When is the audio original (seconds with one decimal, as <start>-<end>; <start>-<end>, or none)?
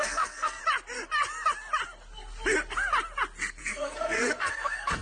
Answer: 0.6-3.6